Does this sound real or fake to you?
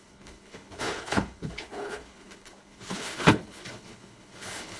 fake